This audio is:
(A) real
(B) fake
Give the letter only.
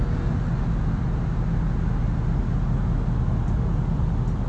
A